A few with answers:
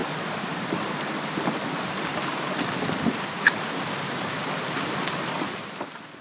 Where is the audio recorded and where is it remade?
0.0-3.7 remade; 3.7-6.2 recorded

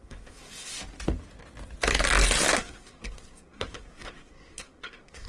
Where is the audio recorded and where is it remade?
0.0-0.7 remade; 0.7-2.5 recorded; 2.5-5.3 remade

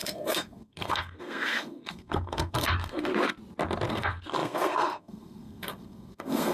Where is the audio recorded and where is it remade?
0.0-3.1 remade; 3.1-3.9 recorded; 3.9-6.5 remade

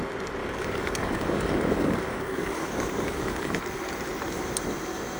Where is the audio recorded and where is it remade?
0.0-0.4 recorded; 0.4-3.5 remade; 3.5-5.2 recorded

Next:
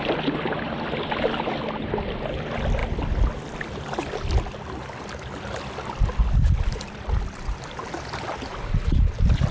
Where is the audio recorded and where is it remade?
0.0-9.5 recorded

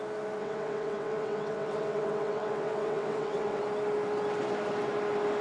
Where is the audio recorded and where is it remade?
0.0-0.4 recorded; 0.4-3.6 remade; 3.6-5.4 recorded